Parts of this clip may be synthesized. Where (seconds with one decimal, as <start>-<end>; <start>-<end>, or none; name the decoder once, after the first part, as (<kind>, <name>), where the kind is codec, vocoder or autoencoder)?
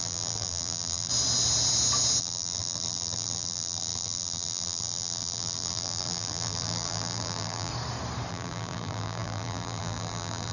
0.0-1.1 (vocoder, BigVGAN v2); 2.2-7.7; 8.3-10.5